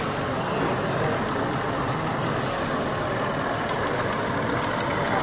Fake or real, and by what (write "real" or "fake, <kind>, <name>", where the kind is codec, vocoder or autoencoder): real